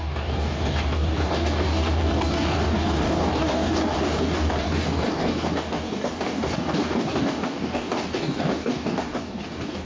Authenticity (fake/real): fake